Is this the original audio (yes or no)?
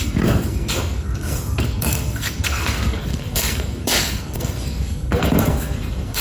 no